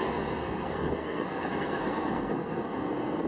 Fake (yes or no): yes